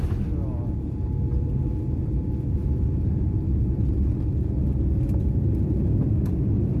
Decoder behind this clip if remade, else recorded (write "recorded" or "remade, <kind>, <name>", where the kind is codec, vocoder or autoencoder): recorded